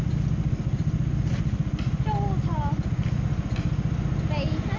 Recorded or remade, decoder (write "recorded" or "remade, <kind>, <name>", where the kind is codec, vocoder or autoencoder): recorded